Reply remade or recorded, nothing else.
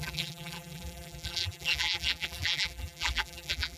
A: remade